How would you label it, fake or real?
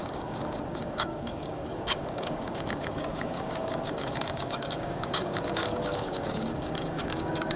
fake